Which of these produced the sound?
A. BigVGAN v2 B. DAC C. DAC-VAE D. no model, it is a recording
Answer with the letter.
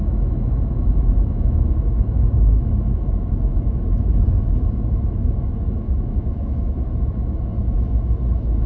C